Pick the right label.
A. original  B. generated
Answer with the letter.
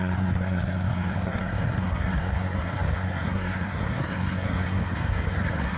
B